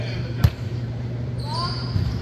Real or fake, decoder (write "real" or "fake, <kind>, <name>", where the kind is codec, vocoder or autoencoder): fake, vocoder, BigVGAN v2